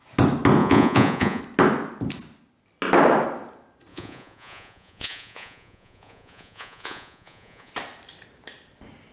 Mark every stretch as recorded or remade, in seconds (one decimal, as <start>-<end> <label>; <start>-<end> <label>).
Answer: 0.0-0.6 recorded; 0.6-1.4 remade; 1.4-3.9 recorded; 3.9-7.7 remade; 7.7-9.1 recorded